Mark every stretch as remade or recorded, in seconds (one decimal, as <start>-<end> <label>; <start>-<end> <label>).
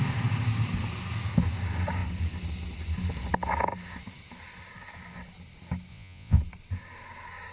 0.0-5.9 recorded; 5.9-6.4 remade; 6.4-7.5 recorded